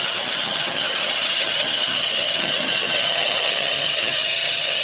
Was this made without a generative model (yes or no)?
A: no